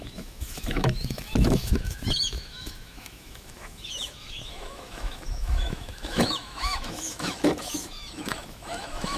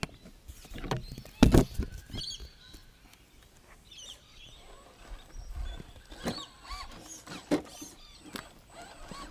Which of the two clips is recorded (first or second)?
second